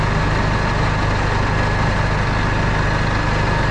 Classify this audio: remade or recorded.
recorded